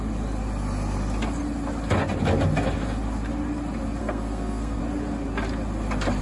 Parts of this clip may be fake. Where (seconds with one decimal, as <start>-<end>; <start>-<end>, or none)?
4.0-4.8